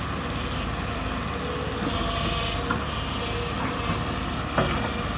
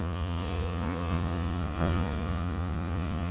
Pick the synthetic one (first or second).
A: second